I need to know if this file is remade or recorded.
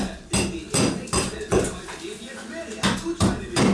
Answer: recorded